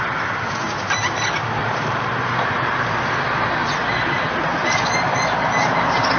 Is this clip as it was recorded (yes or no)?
yes